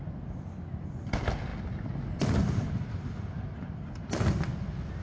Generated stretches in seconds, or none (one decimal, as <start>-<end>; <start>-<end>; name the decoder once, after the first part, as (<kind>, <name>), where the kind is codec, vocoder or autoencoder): none